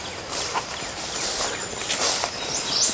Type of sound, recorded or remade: recorded